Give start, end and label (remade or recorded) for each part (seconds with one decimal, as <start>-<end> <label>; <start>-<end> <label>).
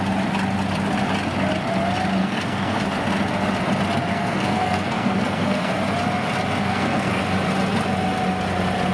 0.0-2.2 recorded; 2.2-2.8 remade; 2.8-4.1 recorded; 4.1-5.7 remade; 5.7-6.6 recorded; 6.6-7.2 remade; 7.2-8.9 recorded